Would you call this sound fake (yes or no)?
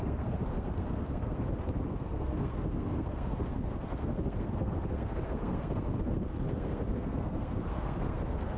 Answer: yes